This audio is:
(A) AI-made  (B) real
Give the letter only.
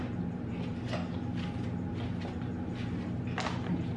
B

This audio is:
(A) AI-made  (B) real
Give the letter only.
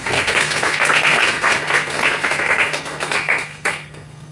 A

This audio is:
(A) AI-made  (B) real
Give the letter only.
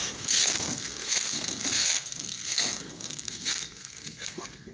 A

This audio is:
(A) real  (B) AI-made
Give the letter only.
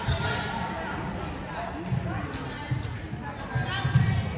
A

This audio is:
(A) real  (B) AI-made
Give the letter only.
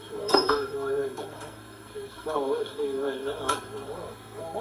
B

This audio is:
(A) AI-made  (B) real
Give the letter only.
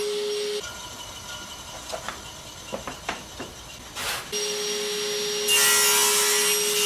B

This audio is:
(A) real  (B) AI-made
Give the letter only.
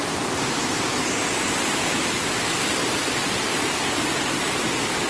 A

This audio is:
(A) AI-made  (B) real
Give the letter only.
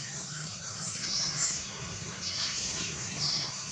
A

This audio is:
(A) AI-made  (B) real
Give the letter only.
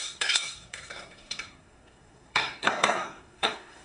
A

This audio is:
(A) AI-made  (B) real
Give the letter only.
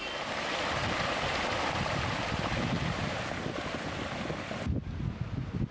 B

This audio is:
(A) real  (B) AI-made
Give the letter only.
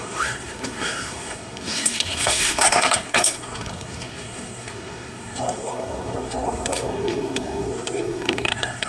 B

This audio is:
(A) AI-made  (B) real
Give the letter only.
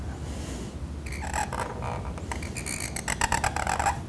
B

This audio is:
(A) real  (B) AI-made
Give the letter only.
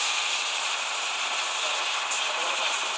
A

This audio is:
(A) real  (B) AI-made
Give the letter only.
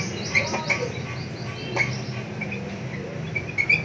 A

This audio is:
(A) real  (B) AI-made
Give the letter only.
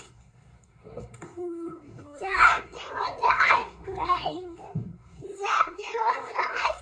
B